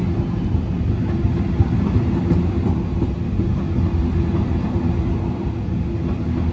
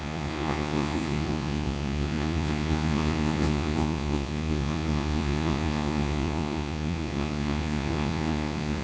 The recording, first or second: first